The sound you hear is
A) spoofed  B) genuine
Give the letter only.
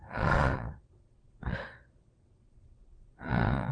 A